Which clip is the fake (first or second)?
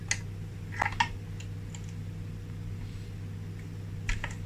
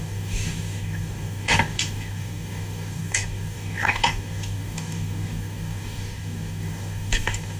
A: second